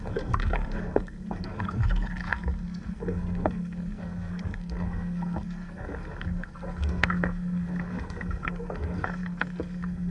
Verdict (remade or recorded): remade